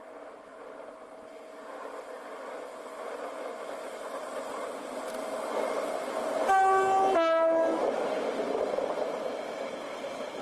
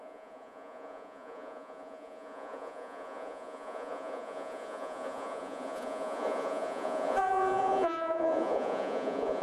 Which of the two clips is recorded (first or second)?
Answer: first